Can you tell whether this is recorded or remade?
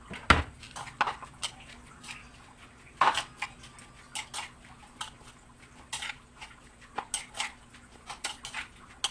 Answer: recorded